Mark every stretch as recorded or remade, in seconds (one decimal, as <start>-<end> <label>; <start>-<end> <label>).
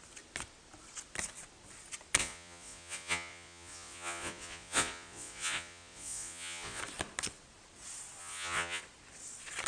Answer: 0.0-2.2 recorded; 2.2-6.8 remade; 6.8-8.2 recorded; 8.2-8.8 remade; 8.8-9.7 recorded